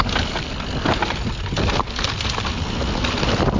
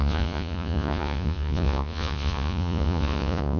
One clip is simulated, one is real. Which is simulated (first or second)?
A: second